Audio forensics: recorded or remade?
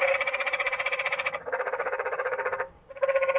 remade